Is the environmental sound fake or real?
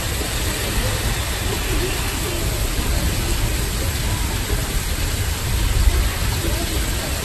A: real